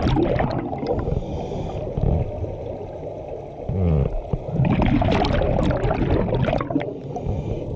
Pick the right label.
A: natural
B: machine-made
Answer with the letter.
A